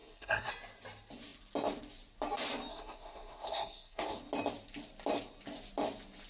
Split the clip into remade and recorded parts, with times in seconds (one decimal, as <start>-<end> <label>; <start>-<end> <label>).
0.0-0.5 remade; 0.5-2.7 recorded; 2.7-4.2 remade; 4.2-6.3 recorded